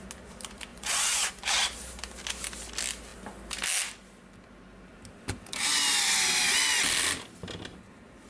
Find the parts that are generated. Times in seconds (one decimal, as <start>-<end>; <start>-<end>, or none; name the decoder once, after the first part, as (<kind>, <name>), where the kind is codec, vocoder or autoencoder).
0.7-1.3 (vocoder, Vocos)